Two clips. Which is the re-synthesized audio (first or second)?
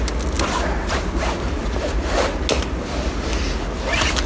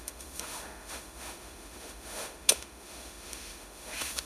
second